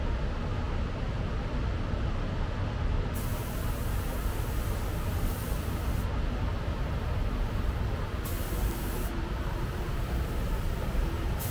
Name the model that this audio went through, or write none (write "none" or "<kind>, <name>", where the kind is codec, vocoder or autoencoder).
none